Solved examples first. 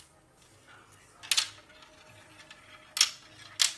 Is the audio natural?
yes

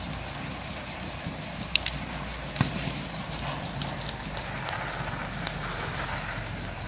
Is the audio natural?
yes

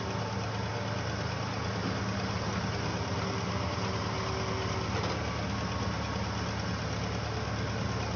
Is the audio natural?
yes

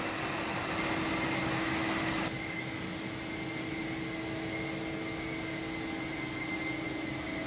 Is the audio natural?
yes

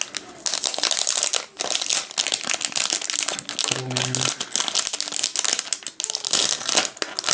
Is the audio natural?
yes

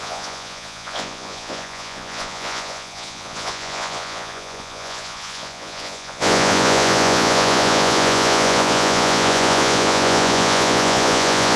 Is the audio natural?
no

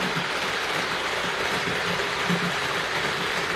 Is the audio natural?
yes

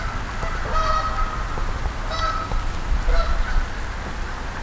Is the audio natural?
yes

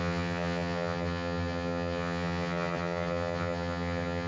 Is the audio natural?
no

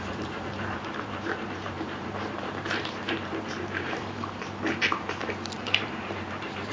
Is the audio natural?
no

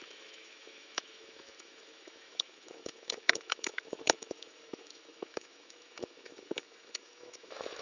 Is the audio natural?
no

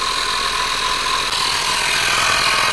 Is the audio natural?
yes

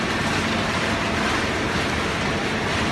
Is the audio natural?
yes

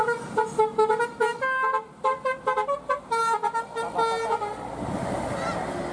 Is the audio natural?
yes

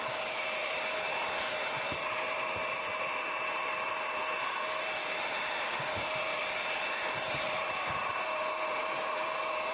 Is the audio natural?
no